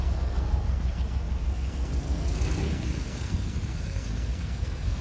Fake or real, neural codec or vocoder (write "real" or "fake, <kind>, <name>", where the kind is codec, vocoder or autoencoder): fake, codec, SNAC